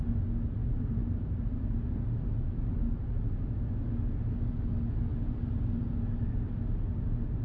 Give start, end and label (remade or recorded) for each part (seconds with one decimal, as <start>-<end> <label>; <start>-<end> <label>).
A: 0.0-0.6 recorded; 0.6-2.4 remade; 2.4-2.8 recorded; 2.8-3.5 remade; 3.5-7.4 recorded

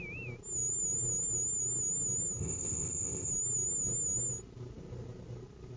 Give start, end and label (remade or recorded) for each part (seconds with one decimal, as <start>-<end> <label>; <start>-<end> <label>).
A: 0.0-2.4 recorded; 2.4-3.3 remade; 3.3-5.8 recorded

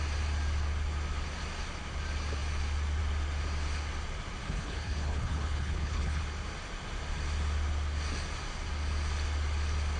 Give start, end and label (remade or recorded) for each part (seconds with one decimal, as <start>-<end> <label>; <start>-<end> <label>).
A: 0.0-4.4 recorded; 4.4-6.2 remade; 6.2-10.0 recorded

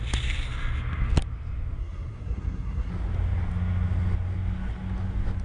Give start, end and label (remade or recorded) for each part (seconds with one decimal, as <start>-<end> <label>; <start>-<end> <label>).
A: 0.0-1.8 recorded; 1.8-2.9 remade; 2.9-5.4 recorded

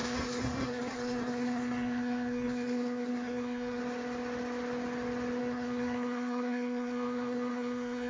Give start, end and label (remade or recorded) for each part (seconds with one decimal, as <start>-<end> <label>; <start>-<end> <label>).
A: 0.0-3.8 remade; 3.8-5.4 recorded; 5.4-8.1 remade

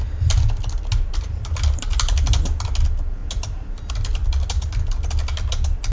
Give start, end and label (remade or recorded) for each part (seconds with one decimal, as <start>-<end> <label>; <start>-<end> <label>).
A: 0.0-5.9 recorded

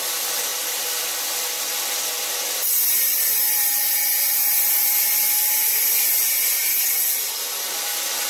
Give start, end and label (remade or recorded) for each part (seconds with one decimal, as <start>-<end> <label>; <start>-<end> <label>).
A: 0.0-8.3 recorded

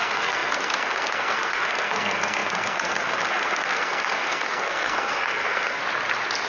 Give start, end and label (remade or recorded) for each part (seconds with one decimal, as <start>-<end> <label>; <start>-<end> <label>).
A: 0.0-5.8 remade; 5.8-6.5 recorded